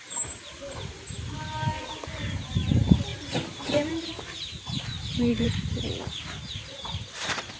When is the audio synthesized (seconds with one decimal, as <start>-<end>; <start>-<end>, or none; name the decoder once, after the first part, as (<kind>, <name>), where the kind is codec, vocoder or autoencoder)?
0.0-7.6 (vocoder, BigVGAN v2)